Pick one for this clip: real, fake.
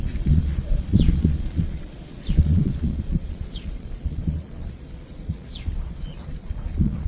fake